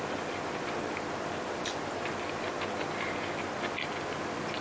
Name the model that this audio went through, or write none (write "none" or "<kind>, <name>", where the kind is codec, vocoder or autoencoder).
none